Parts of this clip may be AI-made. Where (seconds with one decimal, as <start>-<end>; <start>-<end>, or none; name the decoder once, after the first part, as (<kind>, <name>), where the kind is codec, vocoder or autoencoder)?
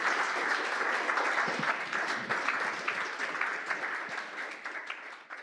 none